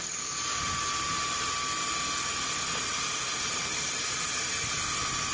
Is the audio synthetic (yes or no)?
no